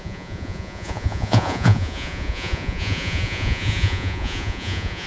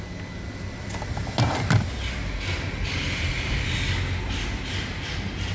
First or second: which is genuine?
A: second